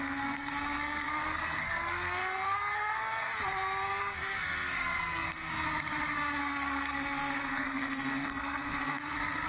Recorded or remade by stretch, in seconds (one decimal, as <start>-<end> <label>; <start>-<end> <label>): 0.0-3.3 remade; 3.3-4.0 recorded; 4.0-5.5 remade; 5.5-6.4 recorded; 6.4-9.5 remade